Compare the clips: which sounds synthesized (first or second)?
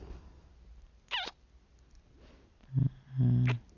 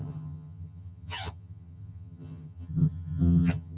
second